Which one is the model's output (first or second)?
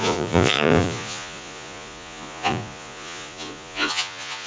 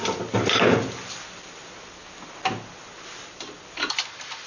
first